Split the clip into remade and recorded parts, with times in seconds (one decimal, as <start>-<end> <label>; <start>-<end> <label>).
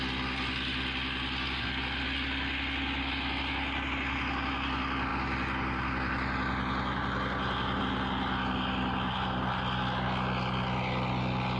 0.0-11.6 recorded